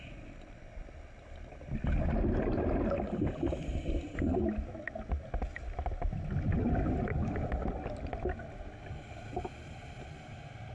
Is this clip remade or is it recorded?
recorded